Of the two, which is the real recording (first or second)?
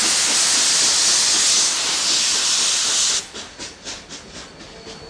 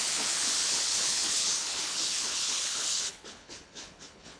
first